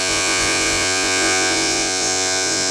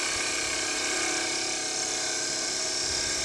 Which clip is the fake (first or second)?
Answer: first